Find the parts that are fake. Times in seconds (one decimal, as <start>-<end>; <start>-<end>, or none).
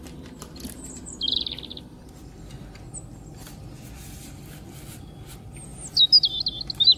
none